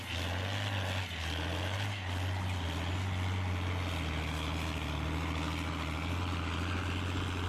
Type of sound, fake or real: real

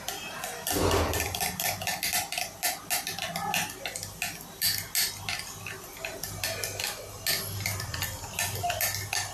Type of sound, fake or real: real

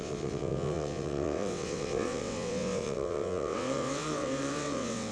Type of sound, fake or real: fake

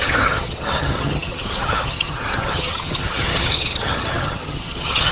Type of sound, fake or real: fake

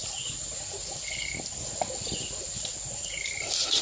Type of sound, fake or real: real